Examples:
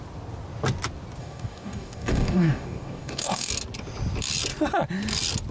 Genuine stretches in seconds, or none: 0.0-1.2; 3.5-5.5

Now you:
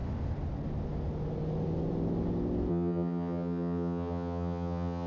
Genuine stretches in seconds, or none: 0.0-2.7

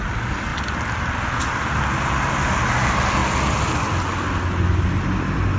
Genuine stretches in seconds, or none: 0.0-5.6

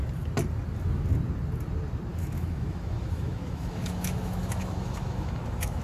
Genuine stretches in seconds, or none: 0.0-2.1

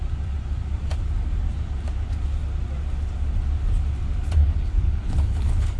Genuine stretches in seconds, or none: 0.0-4.4

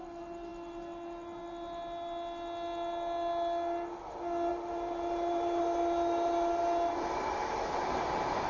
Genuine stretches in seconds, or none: 0.0-4.5; 5.6-8.5